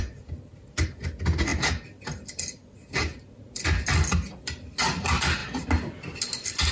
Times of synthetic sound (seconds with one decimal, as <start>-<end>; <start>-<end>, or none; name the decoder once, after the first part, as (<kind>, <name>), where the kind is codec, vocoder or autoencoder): none